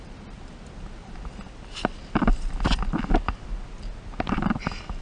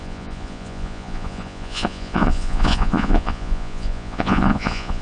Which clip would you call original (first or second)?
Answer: first